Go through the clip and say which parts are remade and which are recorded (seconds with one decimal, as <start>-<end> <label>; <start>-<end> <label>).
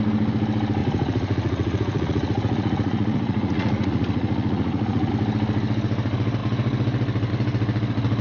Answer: 0.0-0.8 recorded; 0.8-5.1 remade; 5.1-8.2 recorded